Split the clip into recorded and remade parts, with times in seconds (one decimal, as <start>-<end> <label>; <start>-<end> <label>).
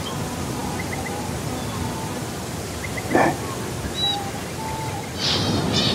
0.0-5.9 recorded